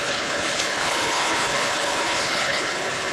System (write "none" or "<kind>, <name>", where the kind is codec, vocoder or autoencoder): codec, HILCodec